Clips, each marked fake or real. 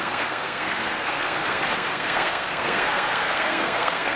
fake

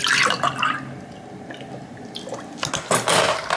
real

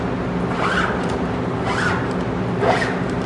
real